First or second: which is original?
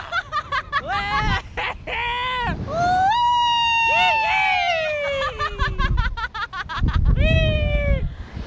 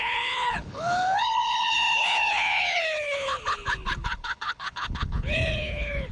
first